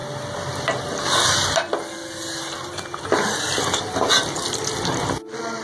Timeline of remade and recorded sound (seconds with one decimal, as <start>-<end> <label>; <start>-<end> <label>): 0.0-5.6 recorded